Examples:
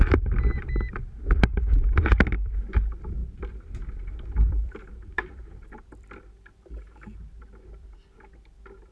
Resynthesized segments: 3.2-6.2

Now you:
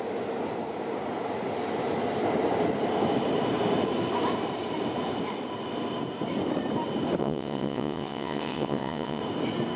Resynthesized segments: 7.2-9.2